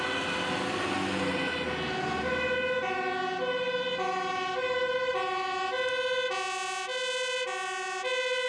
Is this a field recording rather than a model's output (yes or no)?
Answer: yes